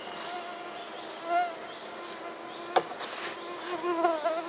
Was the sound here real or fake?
real